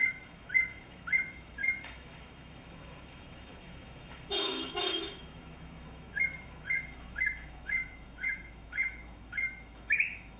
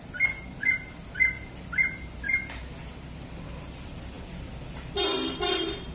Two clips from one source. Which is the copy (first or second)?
first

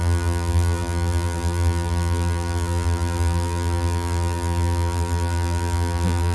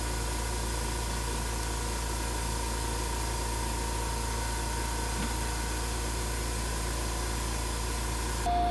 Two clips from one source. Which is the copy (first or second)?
first